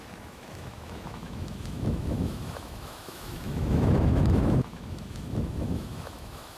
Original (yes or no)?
no